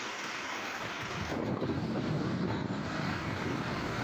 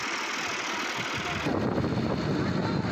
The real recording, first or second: second